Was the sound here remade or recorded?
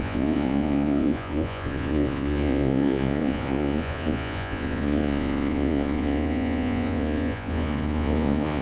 remade